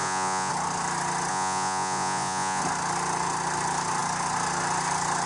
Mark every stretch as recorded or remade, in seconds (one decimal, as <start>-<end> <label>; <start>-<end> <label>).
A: 0.0-0.5 remade; 0.5-1.3 recorded; 1.3-2.6 remade; 2.6-5.3 recorded